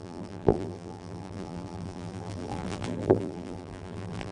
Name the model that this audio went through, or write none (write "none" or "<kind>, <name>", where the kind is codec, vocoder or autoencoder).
vocoder, BigVGAN v2